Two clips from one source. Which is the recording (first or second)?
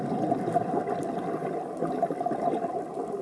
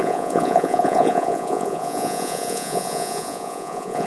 first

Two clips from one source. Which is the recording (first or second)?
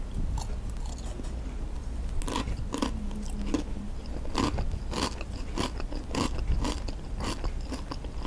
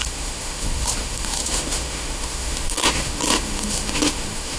first